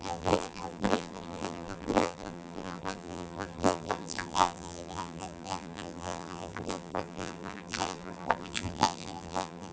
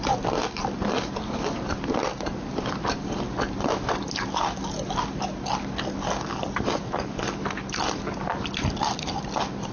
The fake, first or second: first